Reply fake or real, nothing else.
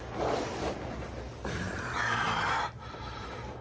real